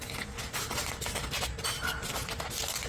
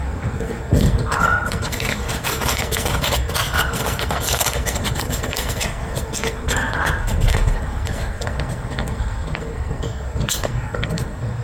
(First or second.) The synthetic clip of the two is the second